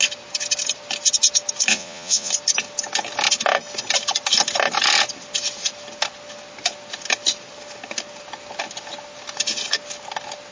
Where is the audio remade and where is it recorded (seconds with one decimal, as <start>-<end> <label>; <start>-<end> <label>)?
0.0-1.7 recorded; 1.7-2.3 remade; 2.3-10.5 recorded

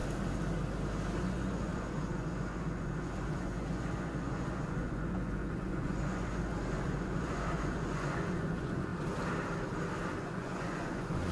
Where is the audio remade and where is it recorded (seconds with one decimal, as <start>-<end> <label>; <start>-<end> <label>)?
0.0-1.2 recorded; 1.2-8.9 remade; 8.9-10.2 recorded; 10.2-11.3 remade

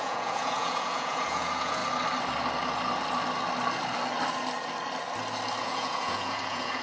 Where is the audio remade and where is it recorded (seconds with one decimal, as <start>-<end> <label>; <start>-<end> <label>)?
0.0-1.8 remade; 1.8-5.6 recorded; 5.6-6.8 remade

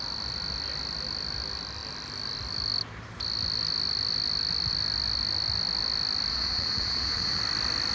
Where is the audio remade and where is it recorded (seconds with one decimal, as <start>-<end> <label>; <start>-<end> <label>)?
0.0-6.3 recorded; 6.3-7.4 remade; 7.4-7.9 recorded

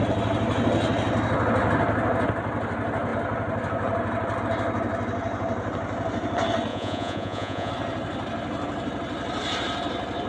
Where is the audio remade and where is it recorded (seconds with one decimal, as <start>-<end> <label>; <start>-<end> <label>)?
0.0-6.7 recorded; 6.7-7.7 remade; 7.7-10.3 recorded

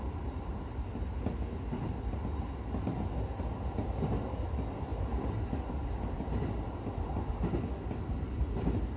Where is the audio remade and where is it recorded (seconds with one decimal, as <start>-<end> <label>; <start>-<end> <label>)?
0.0-9.0 recorded